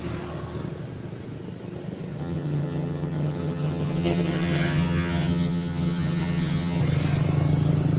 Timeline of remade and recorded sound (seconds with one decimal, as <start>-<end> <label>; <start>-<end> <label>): 0.0-2.2 recorded; 2.2-6.8 remade; 6.8-8.0 recorded